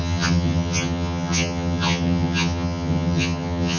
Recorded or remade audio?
remade